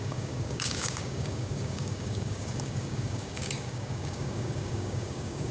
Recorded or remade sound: remade